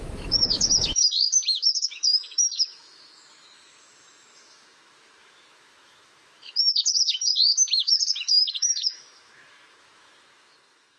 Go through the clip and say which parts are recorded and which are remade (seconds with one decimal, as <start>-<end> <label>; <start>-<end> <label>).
0.0-1.0 remade; 1.0-1.6 recorded; 1.6-11.0 remade